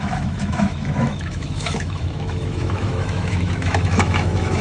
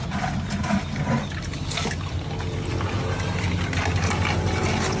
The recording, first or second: second